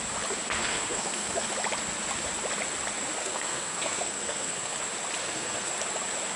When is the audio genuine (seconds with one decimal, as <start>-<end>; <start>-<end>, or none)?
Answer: 0.0-0.6; 1.5-3.2; 4.8-5.2; 5.7-6.4